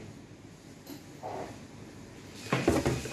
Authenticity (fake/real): real